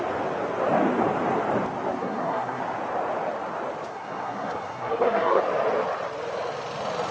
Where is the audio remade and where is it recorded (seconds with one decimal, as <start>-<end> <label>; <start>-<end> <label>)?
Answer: 0.0-2.0 recorded; 2.0-2.6 remade; 2.6-3.9 recorded; 3.9-5.4 remade; 5.4-7.1 recorded

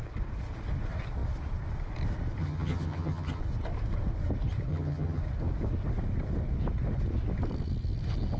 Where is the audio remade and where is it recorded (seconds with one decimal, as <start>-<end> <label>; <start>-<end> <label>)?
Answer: 0.0-2.4 recorded; 2.4-3.4 remade; 3.4-4.7 recorded; 4.7-5.2 remade; 5.2-8.4 recorded

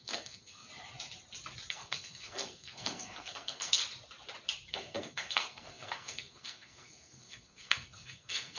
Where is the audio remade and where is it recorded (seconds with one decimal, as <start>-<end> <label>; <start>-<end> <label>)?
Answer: 0.0-0.7 remade; 0.7-1.7 recorded; 1.7-3.8 remade; 3.8-4.7 recorded; 4.7-8.6 remade

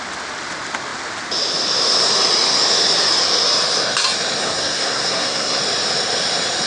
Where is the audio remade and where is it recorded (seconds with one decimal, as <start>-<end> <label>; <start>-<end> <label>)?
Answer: 0.0-4.4 recorded; 4.4-5.6 remade; 5.6-6.7 recorded